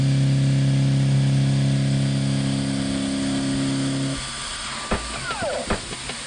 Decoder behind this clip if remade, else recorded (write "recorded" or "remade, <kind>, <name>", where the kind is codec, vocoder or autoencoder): recorded